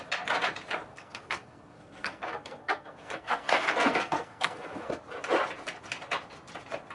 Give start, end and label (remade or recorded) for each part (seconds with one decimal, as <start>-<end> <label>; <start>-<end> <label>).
0.0-0.9 recorded; 0.9-5.0 remade; 5.0-6.9 recorded